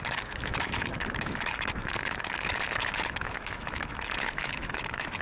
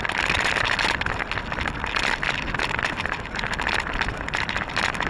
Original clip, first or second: second